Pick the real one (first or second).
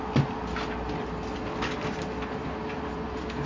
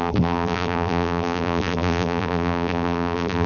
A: first